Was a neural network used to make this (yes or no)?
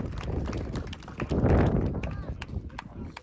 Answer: no